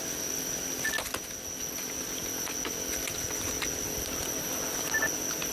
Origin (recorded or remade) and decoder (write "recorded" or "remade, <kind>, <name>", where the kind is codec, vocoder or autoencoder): recorded